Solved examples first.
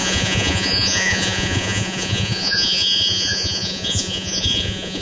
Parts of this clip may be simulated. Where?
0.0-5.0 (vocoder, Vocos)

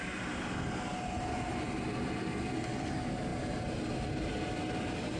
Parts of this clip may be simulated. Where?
none